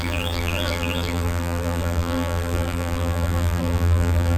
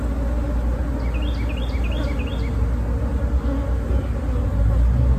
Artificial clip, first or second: first